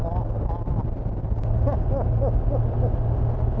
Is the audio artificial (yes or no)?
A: no